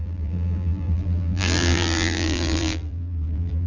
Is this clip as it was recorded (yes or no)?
no